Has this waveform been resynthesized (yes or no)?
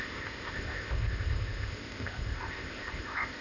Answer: yes